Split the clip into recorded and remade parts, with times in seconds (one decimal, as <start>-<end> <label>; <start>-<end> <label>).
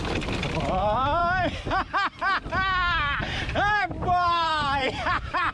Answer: 0.0-0.6 recorded; 0.6-1.2 remade; 1.2-3.2 recorded; 3.2-5.5 remade